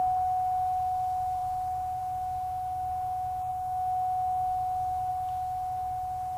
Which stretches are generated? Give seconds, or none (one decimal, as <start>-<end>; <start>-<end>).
none